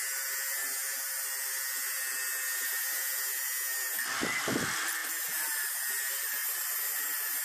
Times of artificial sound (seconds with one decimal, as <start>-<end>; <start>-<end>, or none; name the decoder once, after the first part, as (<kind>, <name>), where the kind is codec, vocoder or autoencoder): 6.4-7.4 (vocoder, BigVGAN v2)

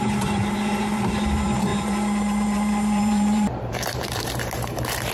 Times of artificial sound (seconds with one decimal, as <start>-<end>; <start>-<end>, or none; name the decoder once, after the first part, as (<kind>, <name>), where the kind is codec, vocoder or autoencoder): 0.0-5.1 (vocoder, BigVGAN v2)

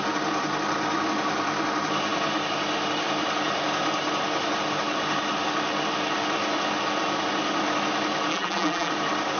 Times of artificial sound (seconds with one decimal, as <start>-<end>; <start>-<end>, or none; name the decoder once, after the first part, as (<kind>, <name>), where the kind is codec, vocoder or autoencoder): 8.3-8.9 (vocoder, BigVGAN v2)

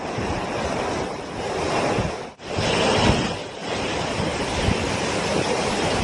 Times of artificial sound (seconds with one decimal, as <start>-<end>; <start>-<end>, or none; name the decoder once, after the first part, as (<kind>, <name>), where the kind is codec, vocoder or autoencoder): none

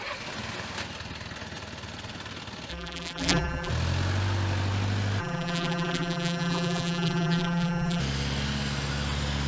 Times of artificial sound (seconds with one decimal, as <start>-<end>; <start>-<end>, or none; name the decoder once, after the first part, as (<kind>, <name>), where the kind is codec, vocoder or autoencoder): 2.7-3.7 (vocoder, BigVGAN v2); 5.2-8.0

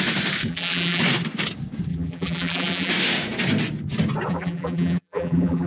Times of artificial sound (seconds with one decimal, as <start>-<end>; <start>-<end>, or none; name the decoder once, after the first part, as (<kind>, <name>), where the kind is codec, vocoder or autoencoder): 0.5-1.0 (vocoder, BigVGAN v2); 1.9-2.9; 4.3-5.7